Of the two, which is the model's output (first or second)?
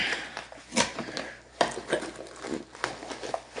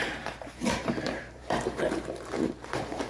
second